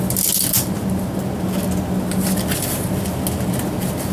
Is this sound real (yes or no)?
yes